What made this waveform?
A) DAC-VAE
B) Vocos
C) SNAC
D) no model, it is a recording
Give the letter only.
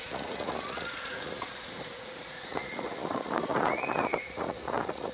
B